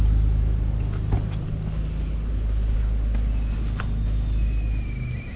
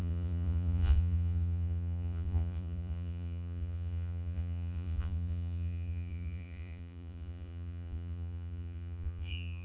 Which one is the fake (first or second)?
second